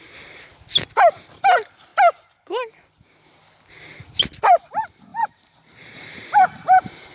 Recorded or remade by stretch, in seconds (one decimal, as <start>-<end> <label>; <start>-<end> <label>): 0.0-5.1 recorded; 5.1-7.1 remade

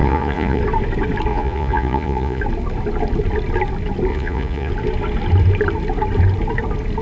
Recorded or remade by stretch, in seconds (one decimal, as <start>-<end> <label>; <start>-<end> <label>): 0.0-0.6 remade; 0.6-1.3 recorded; 1.3-2.4 remade; 2.4-4.1 recorded; 4.1-4.7 remade; 4.7-7.0 recorded